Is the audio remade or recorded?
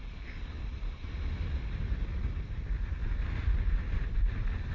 recorded